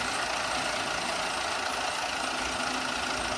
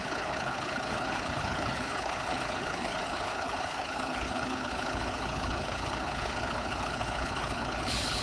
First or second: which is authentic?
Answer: first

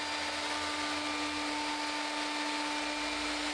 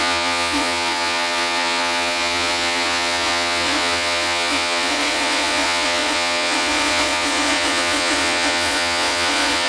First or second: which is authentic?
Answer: first